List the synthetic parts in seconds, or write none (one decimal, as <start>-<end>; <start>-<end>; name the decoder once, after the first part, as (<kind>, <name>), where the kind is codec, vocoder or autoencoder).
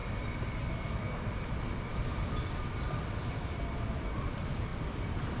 0.0-0.7 (vocoder, BigVGAN v2); 1.9-3.9; 4.7-5.4